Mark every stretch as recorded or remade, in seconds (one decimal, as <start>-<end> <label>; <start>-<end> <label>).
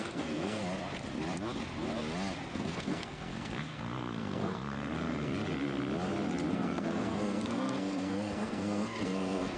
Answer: 0.0-0.6 remade; 0.6-2.5 recorded; 2.5-5.3 remade; 5.3-6.5 recorded; 6.5-9.6 remade